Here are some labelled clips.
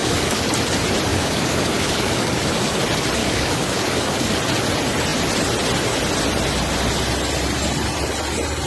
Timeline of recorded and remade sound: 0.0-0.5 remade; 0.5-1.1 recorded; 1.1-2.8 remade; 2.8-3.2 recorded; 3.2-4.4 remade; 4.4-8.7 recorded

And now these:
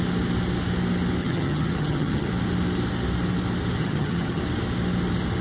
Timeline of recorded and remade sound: 0.0-1.2 recorded; 1.2-2.3 remade; 2.3-3.8 recorded; 3.8-4.4 remade; 4.4-5.4 recorded

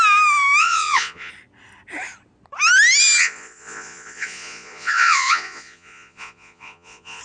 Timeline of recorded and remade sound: 0.0-0.6 recorded; 0.6-1.3 remade; 1.3-3.2 recorded; 3.2-7.2 remade